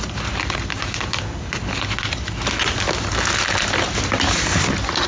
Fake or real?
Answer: real